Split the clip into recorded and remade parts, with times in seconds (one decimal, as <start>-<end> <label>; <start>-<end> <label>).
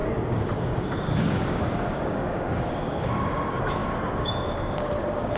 0.0-5.4 remade